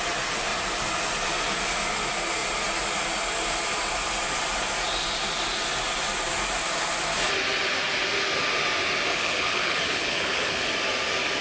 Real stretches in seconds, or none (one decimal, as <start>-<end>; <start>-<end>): 0.0-9.1; 10.7-11.4